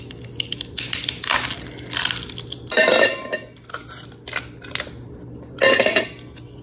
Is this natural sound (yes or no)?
yes